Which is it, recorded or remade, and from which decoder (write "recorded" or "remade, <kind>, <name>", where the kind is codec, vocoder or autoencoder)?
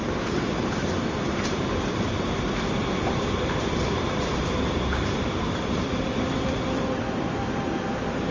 remade, vocoder, BigVGAN v2